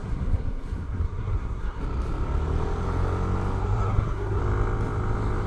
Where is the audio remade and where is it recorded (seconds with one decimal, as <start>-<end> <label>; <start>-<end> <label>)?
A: 0.0-1.8 remade; 1.8-3.6 recorded; 3.6-4.4 remade; 4.4-5.5 recorded